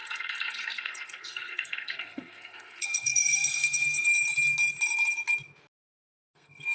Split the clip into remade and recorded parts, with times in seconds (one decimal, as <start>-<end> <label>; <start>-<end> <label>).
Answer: 0.0-4.1 remade; 4.1-5.8 recorded; 5.8-6.7 remade